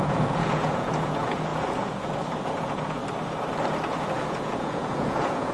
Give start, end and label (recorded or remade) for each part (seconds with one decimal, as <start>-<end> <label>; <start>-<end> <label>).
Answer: 0.0-3.0 remade; 3.0-3.9 recorded; 3.9-5.5 remade